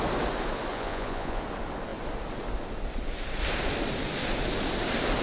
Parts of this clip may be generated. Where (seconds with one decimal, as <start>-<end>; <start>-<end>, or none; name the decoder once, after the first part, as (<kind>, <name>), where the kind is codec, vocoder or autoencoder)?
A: 0.7-1.4 (vocoder, Vocos)